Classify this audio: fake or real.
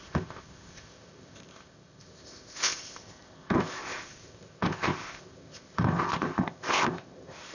fake